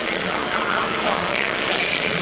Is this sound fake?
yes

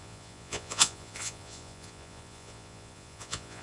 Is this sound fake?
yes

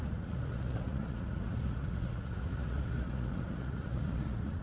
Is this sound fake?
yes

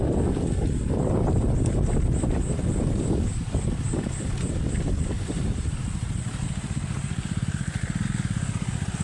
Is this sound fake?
no